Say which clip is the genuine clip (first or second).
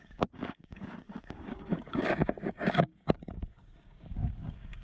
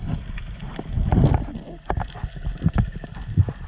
second